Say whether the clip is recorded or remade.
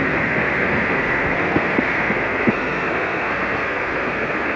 remade